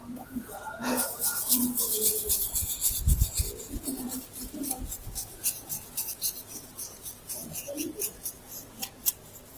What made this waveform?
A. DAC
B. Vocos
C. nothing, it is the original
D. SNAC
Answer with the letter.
B